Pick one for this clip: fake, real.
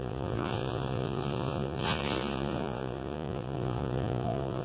fake